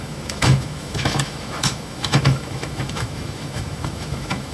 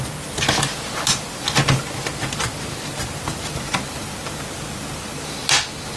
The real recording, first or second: second